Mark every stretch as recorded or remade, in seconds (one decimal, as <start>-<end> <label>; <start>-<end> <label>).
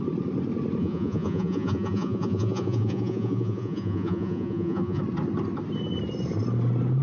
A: 0.0-0.8 recorded; 0.8-5.0 remade; 5.0-7.0 recorded